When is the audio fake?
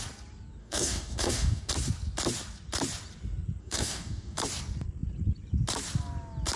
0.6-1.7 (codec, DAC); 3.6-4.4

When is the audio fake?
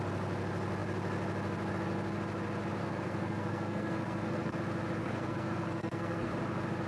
2.8-4.6 (codec, SNAC); 5.0-6.3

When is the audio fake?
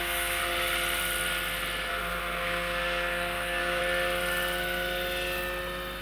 0.0-0.4 (codec, SNAC); 1.9-3.8